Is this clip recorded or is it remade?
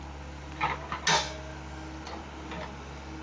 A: recorded